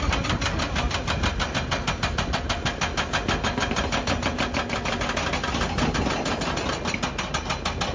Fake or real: real